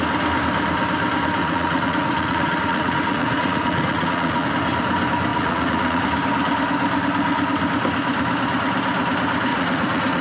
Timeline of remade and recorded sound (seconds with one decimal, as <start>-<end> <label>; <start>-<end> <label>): 0.0-1.4 recorded; 1.4-4.5 remade; 4.5-5.3 recorded; 5.3-6.0 remade; 6.0-9.5 recorded; 9.5-10.2 remade